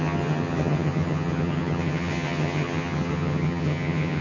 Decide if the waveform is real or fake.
fake